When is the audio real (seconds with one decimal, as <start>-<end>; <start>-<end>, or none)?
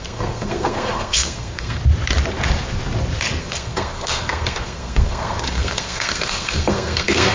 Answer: 1.8-3.4